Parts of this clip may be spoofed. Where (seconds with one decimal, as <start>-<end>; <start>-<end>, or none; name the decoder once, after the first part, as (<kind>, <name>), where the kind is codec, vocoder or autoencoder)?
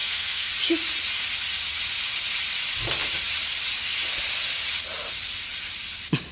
0.0-0.5 (codec, SNAC)